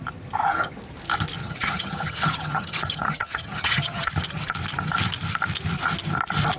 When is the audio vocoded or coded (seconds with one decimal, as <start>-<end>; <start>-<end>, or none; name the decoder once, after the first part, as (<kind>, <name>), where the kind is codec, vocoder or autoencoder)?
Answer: 1.4-4.1 (vocoder, HiFi-GAN)